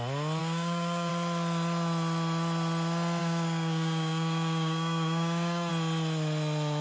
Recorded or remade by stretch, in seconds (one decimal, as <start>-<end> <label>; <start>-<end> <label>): 0.0-0.4 recorded; 0.4-1.1 remade; 1.1-3.2 recorded; 3.2-5.7 remade; 5.7-6.8 recorded